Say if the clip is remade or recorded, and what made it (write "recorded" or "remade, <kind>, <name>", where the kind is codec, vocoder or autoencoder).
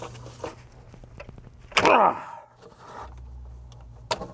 recorded